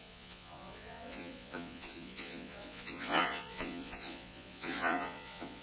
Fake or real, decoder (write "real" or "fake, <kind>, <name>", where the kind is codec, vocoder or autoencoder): fake, vocoder, Vocos